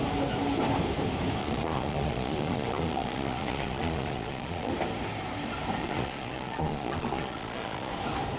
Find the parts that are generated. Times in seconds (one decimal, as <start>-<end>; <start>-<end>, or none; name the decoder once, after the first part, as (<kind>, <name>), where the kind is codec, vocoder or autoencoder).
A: 1.4-4.7 (vocoder, Vocos); 5.8-7.9

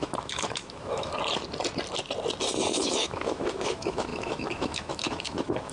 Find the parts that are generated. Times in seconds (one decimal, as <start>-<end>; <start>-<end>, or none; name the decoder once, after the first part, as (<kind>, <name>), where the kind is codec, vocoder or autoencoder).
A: 0.0-1.1 (autoencoder, DAC-VAE); 2.7-5.7

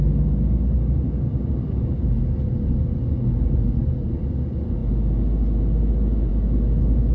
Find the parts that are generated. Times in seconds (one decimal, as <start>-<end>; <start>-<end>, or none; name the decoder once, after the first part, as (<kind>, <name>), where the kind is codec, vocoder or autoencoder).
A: none

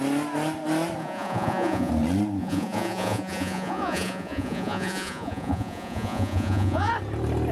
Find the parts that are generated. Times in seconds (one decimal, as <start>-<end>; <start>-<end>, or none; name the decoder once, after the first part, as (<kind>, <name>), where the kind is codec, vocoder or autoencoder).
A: 1.0-1.9 (vocoder, Vocos); 2.4-6.9

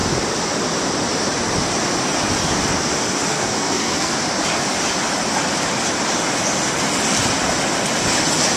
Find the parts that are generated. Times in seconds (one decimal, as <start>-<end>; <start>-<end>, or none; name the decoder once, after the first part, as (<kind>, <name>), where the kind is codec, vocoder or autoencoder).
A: 3.3-4.1 (codec, SNAC)

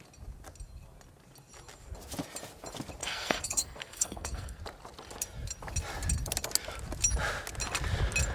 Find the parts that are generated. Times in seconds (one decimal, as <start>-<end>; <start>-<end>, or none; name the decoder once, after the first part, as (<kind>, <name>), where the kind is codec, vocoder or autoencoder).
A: 3.0-4.6 (codec, SNAC)

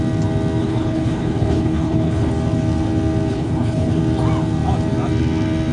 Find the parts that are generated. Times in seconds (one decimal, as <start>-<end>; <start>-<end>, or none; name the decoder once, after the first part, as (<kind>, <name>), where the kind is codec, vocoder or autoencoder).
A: 0.6-2.3 (codec, HILCodec); 3.3-4.0